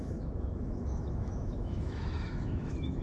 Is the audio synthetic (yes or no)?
yes